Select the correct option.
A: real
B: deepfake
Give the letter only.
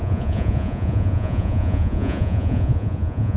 B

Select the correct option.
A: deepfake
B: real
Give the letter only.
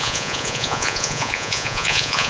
A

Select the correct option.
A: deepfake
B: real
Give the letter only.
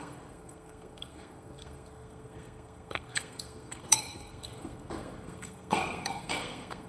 A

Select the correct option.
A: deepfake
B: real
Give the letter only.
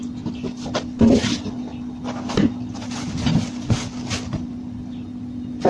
B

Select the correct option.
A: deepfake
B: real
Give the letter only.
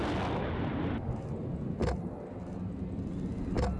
B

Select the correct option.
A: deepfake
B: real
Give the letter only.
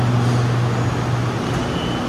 B